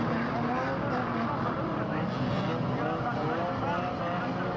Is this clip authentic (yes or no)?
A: yes